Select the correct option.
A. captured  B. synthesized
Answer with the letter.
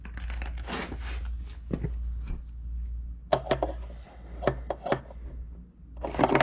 A